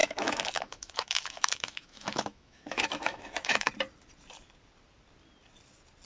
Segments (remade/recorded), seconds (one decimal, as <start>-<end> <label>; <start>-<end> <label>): 0.0-3.7 remade; 3.7-6.1 recorded